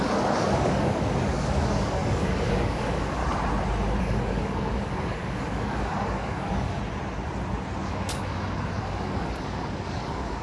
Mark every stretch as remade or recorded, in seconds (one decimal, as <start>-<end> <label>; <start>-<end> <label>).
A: 0.0-3.2 remade; 3.2-4.0 recorded; 4.0-6.8 remade; 6.8-7.8 recorded; 7.8-10.4 remade